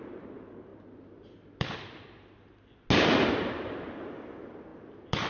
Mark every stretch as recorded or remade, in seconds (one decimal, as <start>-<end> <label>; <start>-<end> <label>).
0.0-5.3 recorded